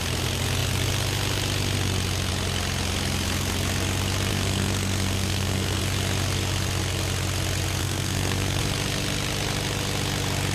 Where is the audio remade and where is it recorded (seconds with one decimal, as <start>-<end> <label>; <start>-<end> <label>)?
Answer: 0.0-4.3 recorded; 4.3-5.8 remade; 5.8-7.8 recorded; 7.8-8.6 remade; 8.6-10.5 recorded